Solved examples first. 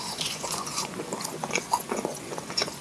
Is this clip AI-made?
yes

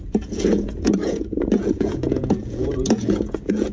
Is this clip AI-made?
yes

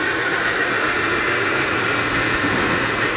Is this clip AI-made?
yes